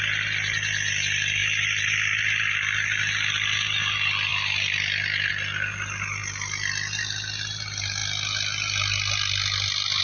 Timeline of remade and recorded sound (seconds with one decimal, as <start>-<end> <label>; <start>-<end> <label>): 0.0-10.0 recorded